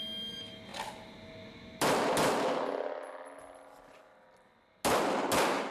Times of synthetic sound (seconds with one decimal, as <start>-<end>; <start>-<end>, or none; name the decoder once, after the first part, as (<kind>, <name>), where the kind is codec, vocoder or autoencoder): none